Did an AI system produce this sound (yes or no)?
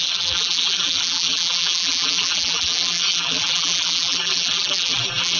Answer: yes